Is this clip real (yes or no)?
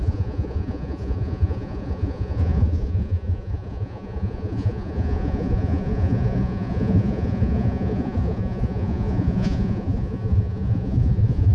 no